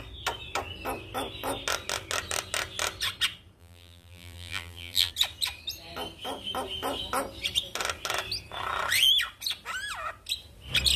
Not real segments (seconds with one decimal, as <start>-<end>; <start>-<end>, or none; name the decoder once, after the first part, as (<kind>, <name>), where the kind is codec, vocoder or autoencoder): 3.6-5.1 (vocoder, BigVGAN v2)